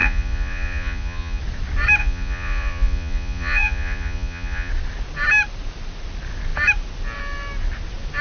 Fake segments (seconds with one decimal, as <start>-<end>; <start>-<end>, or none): 0.0-1.4; 2.0-4.7